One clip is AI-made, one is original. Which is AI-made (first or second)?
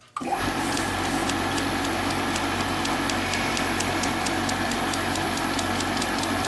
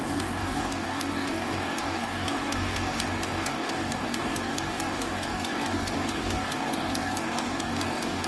second